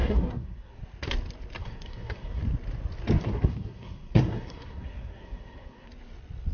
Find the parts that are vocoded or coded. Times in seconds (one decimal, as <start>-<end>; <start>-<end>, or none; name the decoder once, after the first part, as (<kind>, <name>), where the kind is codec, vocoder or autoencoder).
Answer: 0.0-0.8 (codec, SNAC); 1.6-2.4; 3.2-5.9